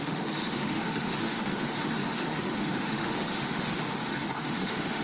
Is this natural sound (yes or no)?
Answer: no